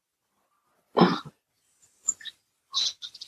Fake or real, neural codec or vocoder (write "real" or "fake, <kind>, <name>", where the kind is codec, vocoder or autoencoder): real